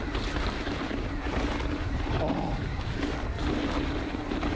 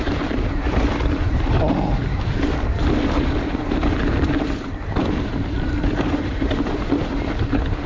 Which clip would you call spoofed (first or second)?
second